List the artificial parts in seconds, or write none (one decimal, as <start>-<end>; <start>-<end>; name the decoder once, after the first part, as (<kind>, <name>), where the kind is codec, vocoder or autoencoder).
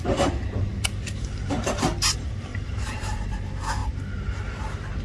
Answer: 0.7-1.5 (vocoder, BigVGAN v2); 2.5-3.3